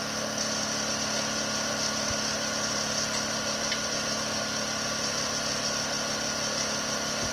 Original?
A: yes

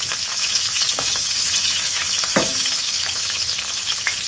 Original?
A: no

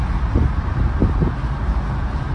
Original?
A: yes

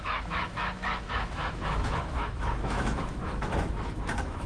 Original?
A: no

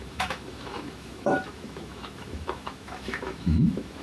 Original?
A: no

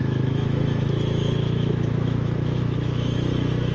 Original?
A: no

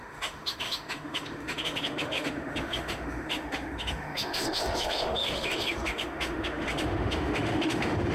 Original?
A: no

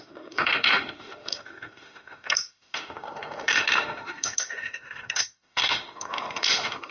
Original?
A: no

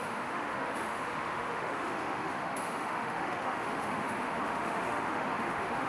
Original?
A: no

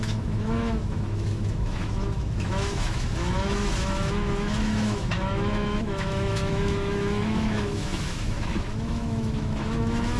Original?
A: no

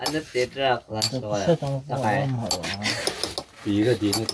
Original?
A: yes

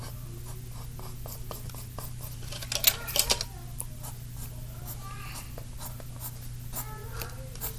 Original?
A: yes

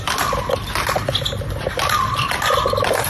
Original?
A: yes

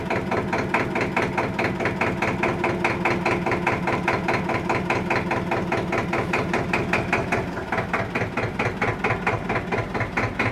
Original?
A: yes